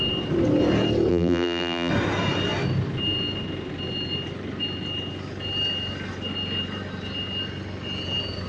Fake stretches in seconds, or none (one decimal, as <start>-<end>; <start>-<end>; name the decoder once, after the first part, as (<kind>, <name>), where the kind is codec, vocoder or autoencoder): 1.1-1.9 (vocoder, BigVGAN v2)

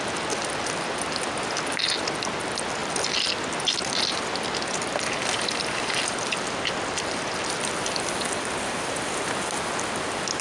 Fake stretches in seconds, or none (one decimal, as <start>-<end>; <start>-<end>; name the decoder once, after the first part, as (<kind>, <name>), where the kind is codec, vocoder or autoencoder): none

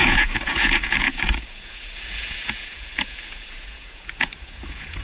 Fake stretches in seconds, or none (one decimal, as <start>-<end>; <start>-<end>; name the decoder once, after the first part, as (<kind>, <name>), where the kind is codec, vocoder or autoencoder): 0.0-5.0 (vocoder, Vocos)